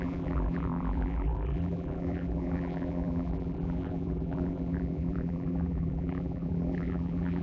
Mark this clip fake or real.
fake